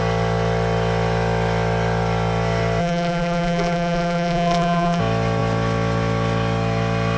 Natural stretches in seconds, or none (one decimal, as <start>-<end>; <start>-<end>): 0.0-2.8; 5.0-7.2